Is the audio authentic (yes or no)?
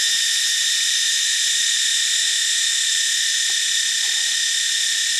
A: no